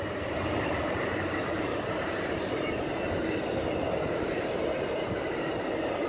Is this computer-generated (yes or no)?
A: yes